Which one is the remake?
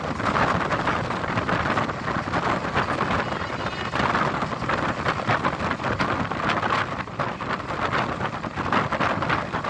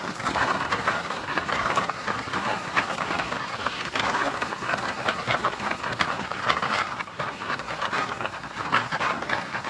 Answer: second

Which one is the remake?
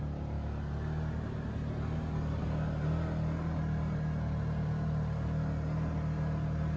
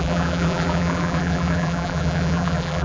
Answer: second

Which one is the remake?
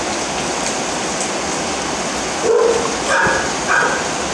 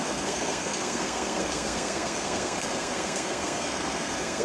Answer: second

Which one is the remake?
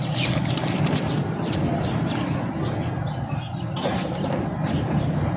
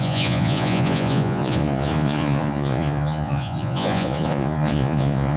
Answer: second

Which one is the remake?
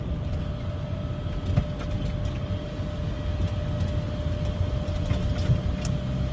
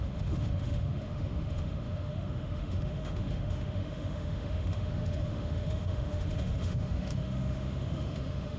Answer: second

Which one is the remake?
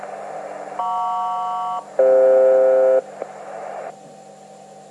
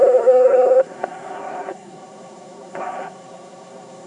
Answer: second